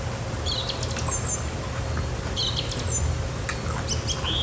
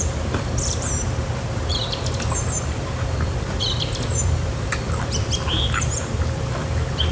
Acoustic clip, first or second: first